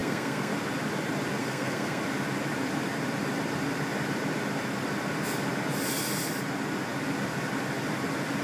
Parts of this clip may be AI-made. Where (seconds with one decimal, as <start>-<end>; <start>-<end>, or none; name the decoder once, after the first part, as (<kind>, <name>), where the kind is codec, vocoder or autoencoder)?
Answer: 0.0-0.5 (codec, SNAC); 1.4-2.0